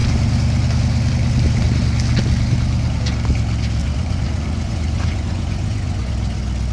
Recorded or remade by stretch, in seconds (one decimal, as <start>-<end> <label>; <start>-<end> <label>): 0.0-3.8 recorded; 3.8-6.1 remade; 6.1-6.7 recorded